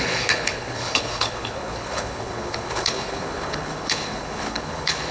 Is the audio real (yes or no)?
no